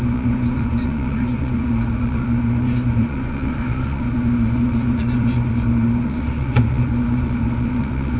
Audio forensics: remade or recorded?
remade